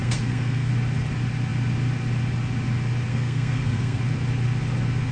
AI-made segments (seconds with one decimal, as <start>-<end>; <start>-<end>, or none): 0.0-0.7; 3.1-4.0